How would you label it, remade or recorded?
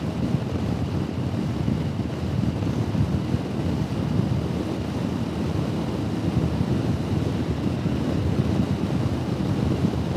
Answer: recorded